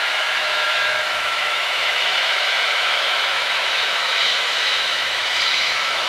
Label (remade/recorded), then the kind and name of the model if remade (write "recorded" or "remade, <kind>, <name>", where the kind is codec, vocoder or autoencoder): remade, autoencoder, DAC-VAE